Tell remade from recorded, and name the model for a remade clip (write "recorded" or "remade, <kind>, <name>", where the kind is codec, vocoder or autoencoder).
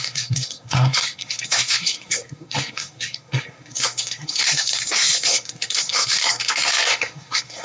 remade, codec, SNAC